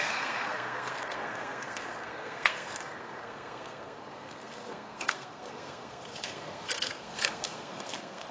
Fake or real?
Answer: fake